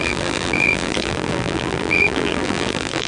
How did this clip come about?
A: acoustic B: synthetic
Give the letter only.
B